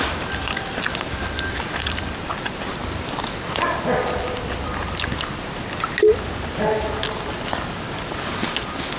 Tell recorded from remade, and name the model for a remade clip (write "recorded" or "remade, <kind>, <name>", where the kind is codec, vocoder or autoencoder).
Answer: recorded